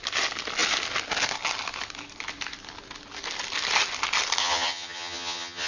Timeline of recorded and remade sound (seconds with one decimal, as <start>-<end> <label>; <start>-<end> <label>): 0.0-4.4 recorded; 4.4-5.7 remade